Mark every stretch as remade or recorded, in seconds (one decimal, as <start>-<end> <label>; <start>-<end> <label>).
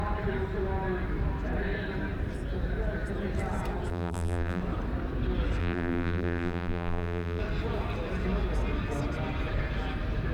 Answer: 0.0-3.9 recorded; 3.9-4.6 remade; 4.6-5.6 recorded; 5.6-7.4 remade; 7.4-10.3 recorded